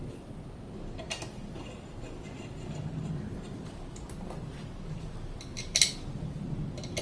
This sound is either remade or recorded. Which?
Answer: recorded